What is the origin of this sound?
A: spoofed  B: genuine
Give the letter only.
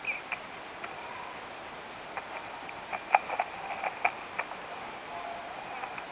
B